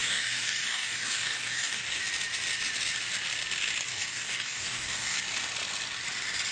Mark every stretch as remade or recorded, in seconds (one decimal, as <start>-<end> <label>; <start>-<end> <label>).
0.0-2.0 remade; 2.0-3.9 recorded; 3.9-5.2 remade; 5.2-6.5 recorded